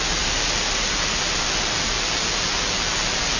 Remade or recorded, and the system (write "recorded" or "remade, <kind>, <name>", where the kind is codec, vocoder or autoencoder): recorded